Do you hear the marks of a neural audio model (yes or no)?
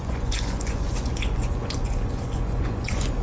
yes